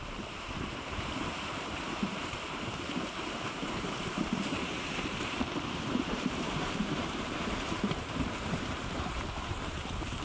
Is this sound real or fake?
fake